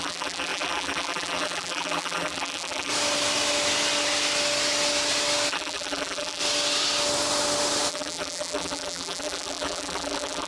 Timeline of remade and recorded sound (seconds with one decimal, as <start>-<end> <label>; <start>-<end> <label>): 0.0-2.9 remade; 2.9-5.5 recorded; 5.5-6.4 remade; 6.4-7.9 recorded; 7.9-10.5 remade